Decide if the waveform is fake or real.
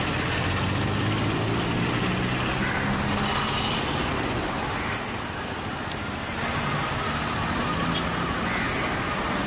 real